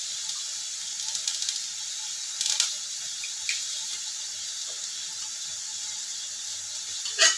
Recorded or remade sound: recorded